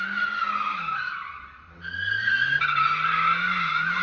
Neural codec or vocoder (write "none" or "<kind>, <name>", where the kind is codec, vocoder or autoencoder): none